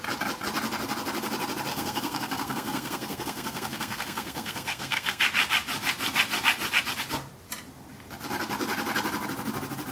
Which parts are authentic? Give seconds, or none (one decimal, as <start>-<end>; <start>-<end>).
0.0-1.7; 5.2-9.9